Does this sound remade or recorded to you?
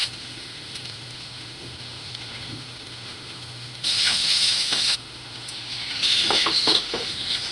remade